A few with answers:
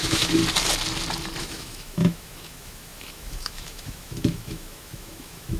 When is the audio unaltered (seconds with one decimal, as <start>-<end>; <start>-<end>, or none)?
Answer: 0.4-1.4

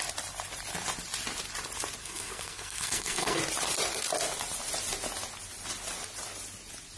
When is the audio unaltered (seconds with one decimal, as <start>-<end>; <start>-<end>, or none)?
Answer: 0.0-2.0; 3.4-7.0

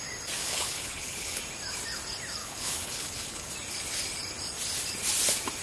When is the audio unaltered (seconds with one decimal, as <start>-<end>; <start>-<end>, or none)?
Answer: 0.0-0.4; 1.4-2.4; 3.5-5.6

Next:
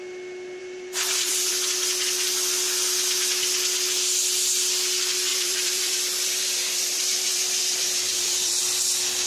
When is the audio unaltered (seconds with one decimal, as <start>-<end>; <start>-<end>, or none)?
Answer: 0.0-0.6; 1.5-5.3; 8.6-9.3

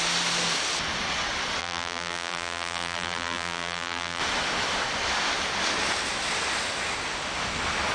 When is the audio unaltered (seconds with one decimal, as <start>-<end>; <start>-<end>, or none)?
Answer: 0.0-1.6; 4.2-7.9

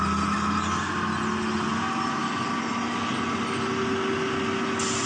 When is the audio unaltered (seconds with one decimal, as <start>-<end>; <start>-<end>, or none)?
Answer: 0.0-5.1

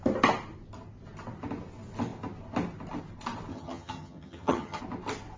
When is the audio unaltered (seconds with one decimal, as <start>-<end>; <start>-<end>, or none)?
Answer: 0.0-3.5; 4.8-5.4

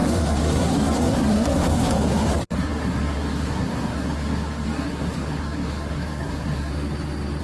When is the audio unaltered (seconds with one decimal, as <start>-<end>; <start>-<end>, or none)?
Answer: 6.7-7.4